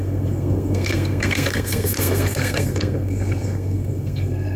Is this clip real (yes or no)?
no